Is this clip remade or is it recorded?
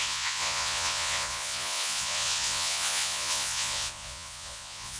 remade